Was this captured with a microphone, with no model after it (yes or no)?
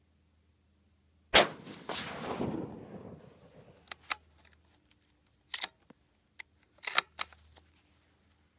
yes